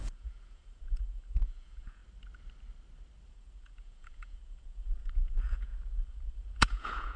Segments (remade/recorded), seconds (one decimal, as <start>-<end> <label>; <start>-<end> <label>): 0.0-2.0 remade; 2.0-3.3 recorded; 3.3-7.2 remade

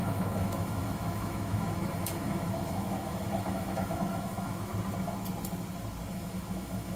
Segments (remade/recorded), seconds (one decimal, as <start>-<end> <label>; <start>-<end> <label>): 0.0-4.7 remade; 4.7-6.1 recorded; 6.1-7.0 remade